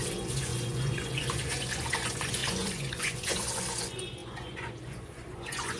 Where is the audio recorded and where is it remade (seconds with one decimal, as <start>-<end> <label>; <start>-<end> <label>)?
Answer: 0.0-5.8 remade